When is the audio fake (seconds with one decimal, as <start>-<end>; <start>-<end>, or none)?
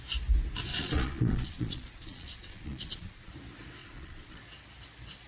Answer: 0.7-3.3; 3.8-4.4